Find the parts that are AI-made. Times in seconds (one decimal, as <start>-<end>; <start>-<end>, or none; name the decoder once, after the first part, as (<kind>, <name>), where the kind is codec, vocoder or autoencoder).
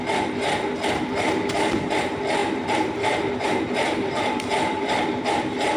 2.4-5.8 (vocoder, BigVGAN v2)